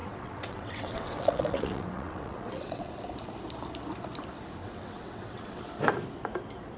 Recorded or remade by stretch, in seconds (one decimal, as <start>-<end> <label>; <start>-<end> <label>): 0.0-2.9 remade; 2.9-4.6 recorded; 4.6-5.6 remade; 5.6-6.8 recorded